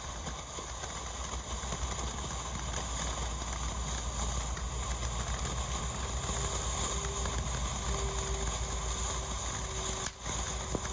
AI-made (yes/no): no